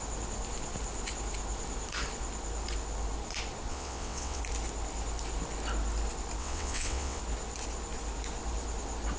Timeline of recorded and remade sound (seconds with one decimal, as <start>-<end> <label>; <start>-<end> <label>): 0.0-3.7 recorded; 3.7-4.4 remade; 4.4-6.4 recorded; 6.4-7.2 remade; 7.2-9.2 recorded